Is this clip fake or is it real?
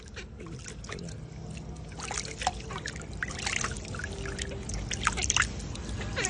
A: real